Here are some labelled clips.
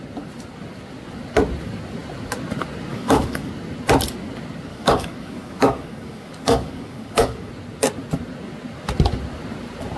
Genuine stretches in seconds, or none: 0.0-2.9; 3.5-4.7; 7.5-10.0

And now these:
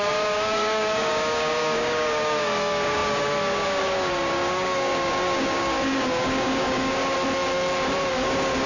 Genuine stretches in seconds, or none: 7.0-8.1

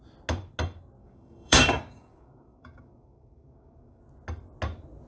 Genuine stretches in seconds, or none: 0.0-1.0; 4.0-5.1